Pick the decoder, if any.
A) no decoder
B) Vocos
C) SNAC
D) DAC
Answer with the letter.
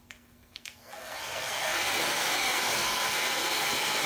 C